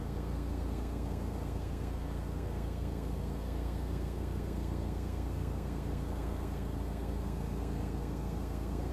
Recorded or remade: remade